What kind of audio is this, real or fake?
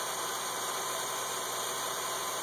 real